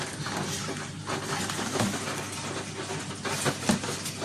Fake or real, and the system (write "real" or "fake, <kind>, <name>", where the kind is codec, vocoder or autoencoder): real